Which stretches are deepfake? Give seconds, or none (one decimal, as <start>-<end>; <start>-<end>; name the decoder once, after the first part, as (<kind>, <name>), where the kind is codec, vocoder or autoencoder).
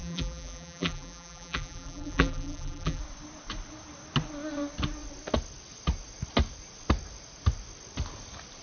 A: 0.0-3.0 (vocoder, BigVGAN v2)